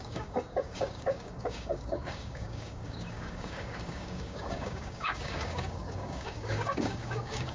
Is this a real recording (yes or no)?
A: no